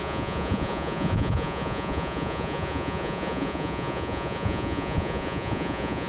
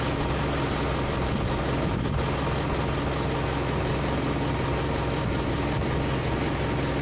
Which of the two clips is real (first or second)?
second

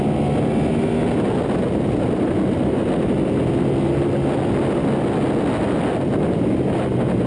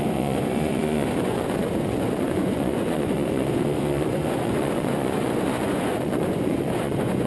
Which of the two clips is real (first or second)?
first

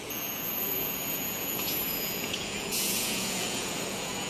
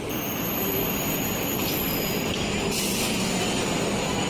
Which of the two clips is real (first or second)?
second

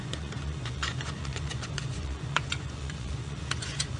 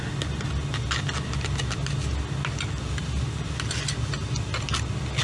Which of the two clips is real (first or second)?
second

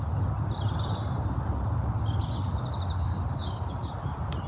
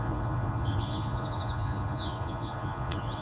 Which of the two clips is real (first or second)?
first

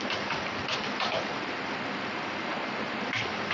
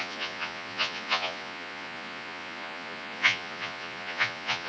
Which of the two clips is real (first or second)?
first